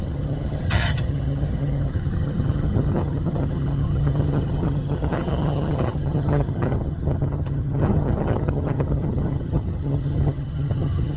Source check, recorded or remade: remade